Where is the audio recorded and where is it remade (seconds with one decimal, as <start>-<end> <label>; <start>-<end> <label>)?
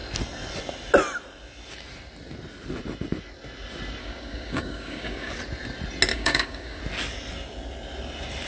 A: 0.0-4.0 recorded; 4.0-5.3 remade; 5.3-6.1 recorded; 6.1-6.8 remade; 6.8-8.5 recorded